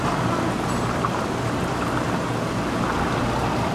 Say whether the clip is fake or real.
real